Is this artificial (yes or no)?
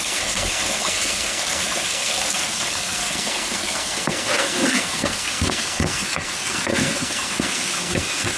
yes